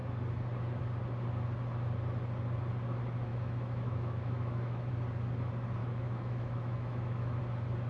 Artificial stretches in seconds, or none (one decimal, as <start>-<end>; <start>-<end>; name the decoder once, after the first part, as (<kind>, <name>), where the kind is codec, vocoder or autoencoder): 3.3-4.9 (autoencoder, DAC-VAE); 5.8-7.4